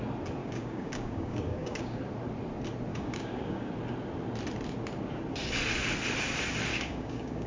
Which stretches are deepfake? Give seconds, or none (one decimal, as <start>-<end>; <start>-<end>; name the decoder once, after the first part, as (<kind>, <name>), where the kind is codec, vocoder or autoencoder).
0.4-2.0 (codec, DAC); 2.9-3.7; 6.7-7.5